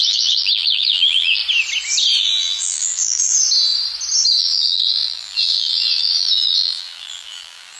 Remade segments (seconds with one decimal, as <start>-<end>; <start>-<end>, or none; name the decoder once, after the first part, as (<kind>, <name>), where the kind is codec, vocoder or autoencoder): 0.0-1.4 (vocoder, BigVGAN v2); 2.2-3.3; 4.4-7.8